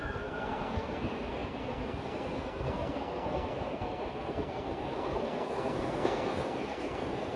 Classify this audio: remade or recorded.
remade